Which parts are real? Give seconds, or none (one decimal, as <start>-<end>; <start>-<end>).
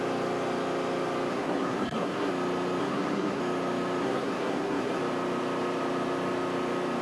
0.0-1.3; 2.3-2.8; 3.4-4.0; 5.0-7.0